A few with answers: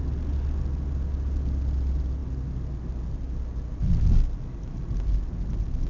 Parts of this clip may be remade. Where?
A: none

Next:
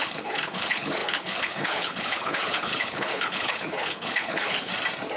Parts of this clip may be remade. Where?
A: 0.0-4.7 (codec, HILCodec)

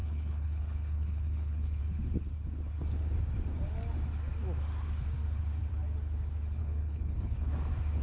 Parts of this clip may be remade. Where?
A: 0.0-1.8 (codec, HILCodec); 6.6-7.5

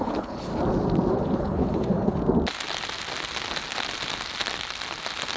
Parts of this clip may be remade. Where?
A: 0.0-0.5 (codec, HILCodec); 1.1-2.2